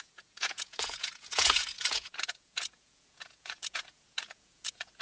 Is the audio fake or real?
fake